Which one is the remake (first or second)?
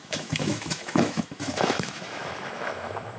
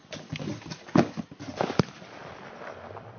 first